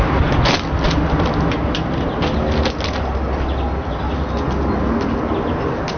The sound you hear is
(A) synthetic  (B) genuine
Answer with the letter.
B